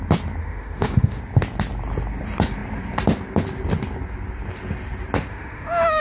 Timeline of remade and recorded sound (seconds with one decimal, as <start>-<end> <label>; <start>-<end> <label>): 0.0-0.4 recorded; 0.4-1.2 remade; 1.2-5.3 recorded; 5.3-6.0 remade